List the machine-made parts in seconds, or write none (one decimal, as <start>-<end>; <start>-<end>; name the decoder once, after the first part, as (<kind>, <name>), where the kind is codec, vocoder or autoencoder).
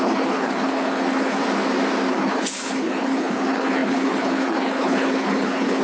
0.0-1.4 (codec, HILCodec); 2.1-5.8